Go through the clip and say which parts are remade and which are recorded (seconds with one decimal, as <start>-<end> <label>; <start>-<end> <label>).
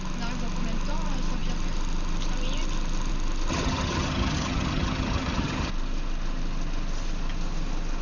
0.0-3.5 recorded; 3.5-5.7 remade; 5.7-8.0 recorded